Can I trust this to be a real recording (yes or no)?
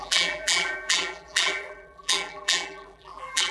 no